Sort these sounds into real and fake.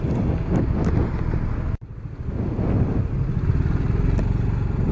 real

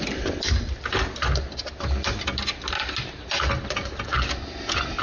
real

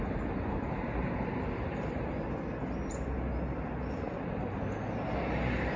real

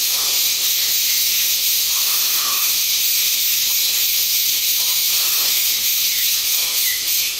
fake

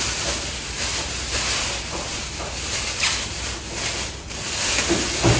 real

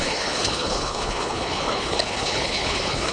fake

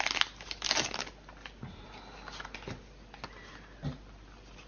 real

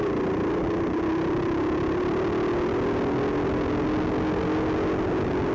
real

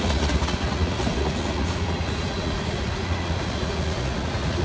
fake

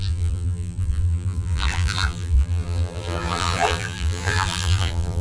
fake